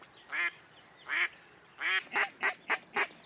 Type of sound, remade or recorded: recorded